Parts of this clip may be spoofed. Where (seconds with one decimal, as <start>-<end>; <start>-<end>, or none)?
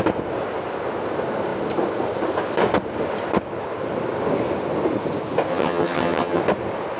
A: 5.5-6.4